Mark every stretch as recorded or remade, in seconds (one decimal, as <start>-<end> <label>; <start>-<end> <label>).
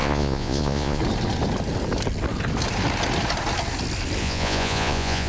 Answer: 0.0-1.0 remade; 1.0-4.2 recorded; 4.2-5.3 remade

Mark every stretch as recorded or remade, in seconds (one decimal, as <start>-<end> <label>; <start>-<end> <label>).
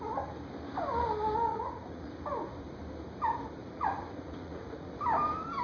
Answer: 0.0-1.5 recorded; 1.5-2.1 remade; 2.1-3.6 recorded; 3.6-4.9 remade; 4.9-5.6 recorded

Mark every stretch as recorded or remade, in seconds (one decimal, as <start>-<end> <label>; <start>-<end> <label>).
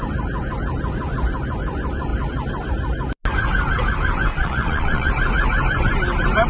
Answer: 0.0-4.3 recorded; 4.3-5.1 remade; 5.1-6.5 recorded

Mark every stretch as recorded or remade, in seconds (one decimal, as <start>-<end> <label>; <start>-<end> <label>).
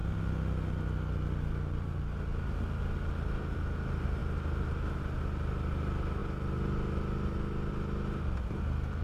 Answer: 0.0-9.0 recorded